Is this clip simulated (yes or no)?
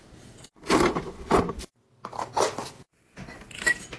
no